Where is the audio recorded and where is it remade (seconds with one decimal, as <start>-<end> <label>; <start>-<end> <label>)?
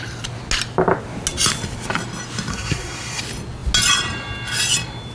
0.0-2.5 recorded; 2.5-3.2 remade; 3.2-5.1 recorded